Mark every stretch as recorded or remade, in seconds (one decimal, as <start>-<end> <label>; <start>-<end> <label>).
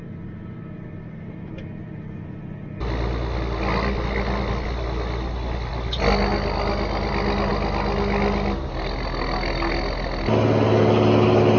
0.0-11.6 recorded